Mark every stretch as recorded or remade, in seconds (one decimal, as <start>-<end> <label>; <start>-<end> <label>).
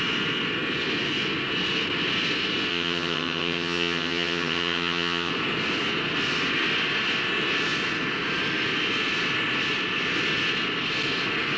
0.0-2.7 recorded; 2.7-5.3 remade; 5.3-11.6 recorded